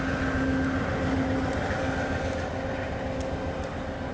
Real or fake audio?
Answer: real